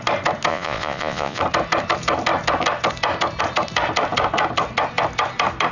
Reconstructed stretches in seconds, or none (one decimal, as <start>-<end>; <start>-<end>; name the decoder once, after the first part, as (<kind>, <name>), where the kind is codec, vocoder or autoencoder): 0.5-1.4 (vocoder, Vocos)